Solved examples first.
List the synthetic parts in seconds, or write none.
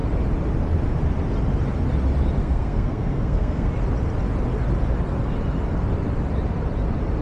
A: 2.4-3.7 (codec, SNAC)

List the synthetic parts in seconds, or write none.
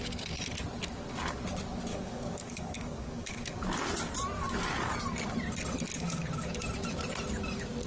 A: 1.9-3.4 (codec, DAC); 5.9-6.5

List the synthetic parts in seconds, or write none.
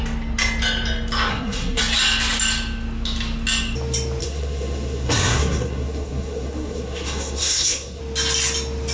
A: 1.3-1.8 (codec, SNAC); 4.2-8.0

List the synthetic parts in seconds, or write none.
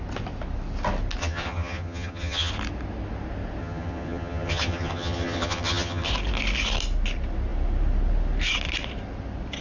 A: 1.2-2.5 (vocoder, HiFi-GAN); 3.6-6.1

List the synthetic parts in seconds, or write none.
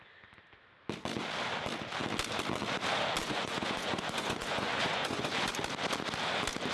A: 3.2-5.5 (vocoder, Vocos)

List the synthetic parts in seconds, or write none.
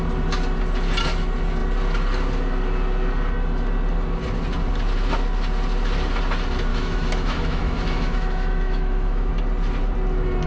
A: 6.7-9.3 (autoencoder, DAC-VAE)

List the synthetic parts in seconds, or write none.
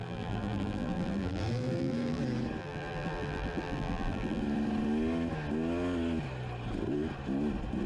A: 0.0-2.2 (vocoder, BigVGAN v2); 2.6-4.4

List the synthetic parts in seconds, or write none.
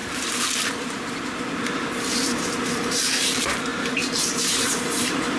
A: 0.0-5.4 (vocoder, BigVGAN v2)